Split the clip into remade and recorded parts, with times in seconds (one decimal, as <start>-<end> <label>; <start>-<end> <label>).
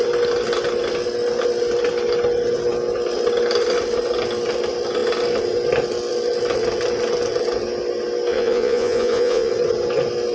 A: 0.0-8.3 recorded; 8.3-9.5 remade; 9.5-10.3 recorded